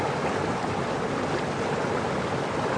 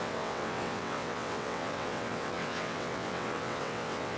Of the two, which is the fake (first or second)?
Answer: second